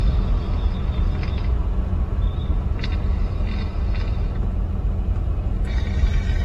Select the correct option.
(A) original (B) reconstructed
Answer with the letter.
A